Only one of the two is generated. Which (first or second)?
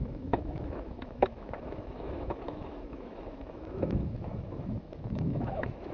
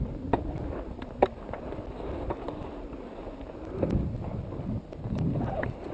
first